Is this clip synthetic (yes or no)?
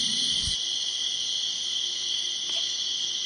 no